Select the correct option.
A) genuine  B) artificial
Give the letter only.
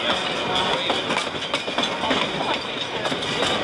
A